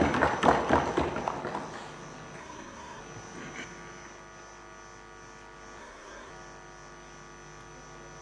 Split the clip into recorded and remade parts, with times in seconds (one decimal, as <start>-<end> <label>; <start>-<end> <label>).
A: 0.0-2.4 recorded; 2.4-3.0 remade; 3.0-5.8 recorded; 5.8-6.3 remade; 6.3-8.2 recorded